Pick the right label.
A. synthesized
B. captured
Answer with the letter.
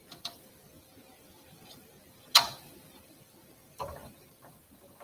A